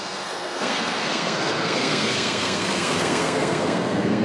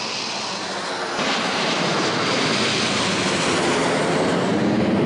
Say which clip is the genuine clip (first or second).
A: second